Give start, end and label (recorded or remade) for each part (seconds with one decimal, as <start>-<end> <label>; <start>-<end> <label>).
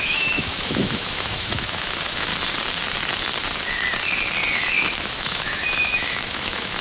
0.0-2.3 remade; 2.3-4.6 recorded; 4.6-6.8 remade